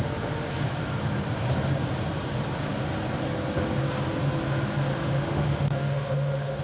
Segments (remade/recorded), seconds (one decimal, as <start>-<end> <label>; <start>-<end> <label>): 0.0-4.9 recorded; 4.9-6.6 remade